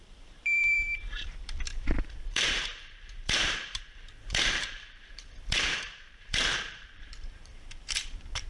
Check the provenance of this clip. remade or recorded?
remade